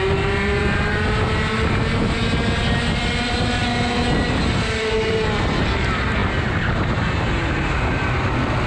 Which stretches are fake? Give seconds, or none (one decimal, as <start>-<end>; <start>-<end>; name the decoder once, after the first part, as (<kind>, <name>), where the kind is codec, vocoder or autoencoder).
none